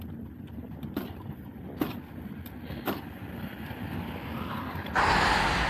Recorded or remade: recorded